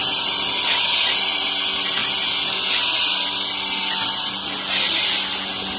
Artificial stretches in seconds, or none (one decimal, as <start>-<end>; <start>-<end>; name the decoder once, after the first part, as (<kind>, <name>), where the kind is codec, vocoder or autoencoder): 0.0-1.2 (vocoder, BigVGAN v2)